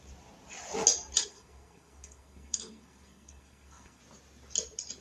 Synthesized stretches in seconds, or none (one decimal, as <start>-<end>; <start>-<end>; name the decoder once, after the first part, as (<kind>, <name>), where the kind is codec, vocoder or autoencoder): 1.3-4.0 (codec, SNAC)